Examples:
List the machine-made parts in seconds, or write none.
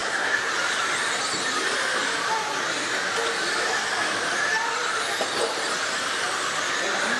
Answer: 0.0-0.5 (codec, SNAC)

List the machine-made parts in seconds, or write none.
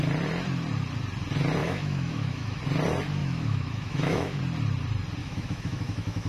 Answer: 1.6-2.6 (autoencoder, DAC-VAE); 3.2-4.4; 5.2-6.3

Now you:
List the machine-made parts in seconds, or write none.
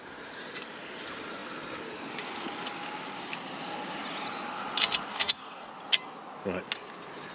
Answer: 5.1-5.7 (codec, DAC)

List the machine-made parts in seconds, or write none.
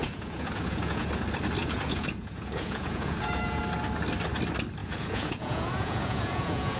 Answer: 0.0-1.1 (vocoder, Vocos); 1.6-3.6; 4.8-6.8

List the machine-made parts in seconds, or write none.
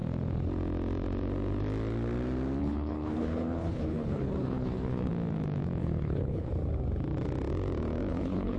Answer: 2.6-5.1 (codec, HILCodec); 5.8-6.5; 8.1-8.6